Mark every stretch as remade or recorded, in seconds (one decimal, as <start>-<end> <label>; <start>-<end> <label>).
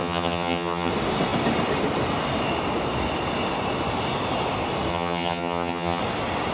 0.0-0.9 remade; 0.9-4.9 recorded; 4.9-6.0 remade; 6.0-6.5 recorded